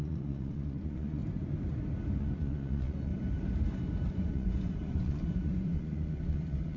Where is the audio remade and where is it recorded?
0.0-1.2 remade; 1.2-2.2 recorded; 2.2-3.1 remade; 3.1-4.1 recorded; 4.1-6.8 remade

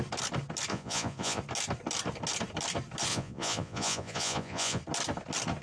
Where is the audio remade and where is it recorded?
0.0-0.7 recorded; 0.7-1.4 remade; 1.4-3.1 recorded; 3.1-4.8 remade; 4.8-5.6 recorded

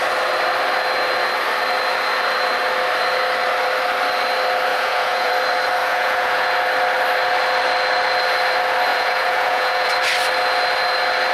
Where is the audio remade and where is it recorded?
0.0-4.7 recorded; 4.7-5.3 remade; 5.3-5.8 recorded; 5.8-6.5 remade; 6.5-8.9 recorded; 8.9-9.9 remade; 9.9-11.3 recorded

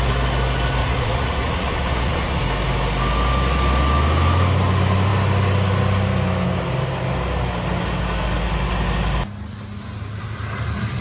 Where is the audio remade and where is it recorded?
0.0-0.8 recorded; 0.8-2.4 remade; 2.4-11.0 recorded

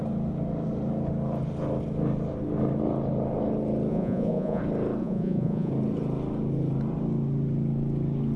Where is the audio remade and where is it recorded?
0.0-3.9 recorded; 3.9-4.6 remade; 4.6-5.0 recorded; 5.0-5.7 remade; 5.7-8.4 recorded

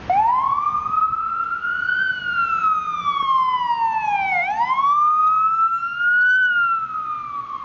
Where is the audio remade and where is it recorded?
0.0-1.2 recorded; 1.2-2.0 remade; 2.0-7.6 recorded

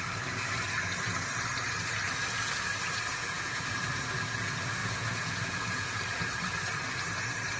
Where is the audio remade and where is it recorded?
0.0-3.1 recorded; 3.1-3.7 remade; 3.7-4.8 recorded; 4.8-6.0 remade; 6.0-7.6 recorded

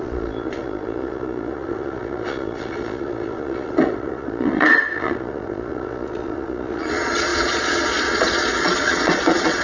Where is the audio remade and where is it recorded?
0.0-9.6 remade